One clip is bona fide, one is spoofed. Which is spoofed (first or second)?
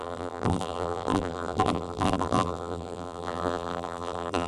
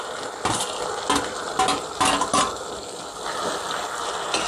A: first